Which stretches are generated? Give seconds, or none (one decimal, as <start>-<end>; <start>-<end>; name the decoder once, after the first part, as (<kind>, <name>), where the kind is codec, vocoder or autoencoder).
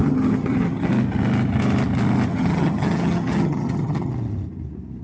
0.0-0.9 (vocoder, HiFi-GAN); 2.3-4.1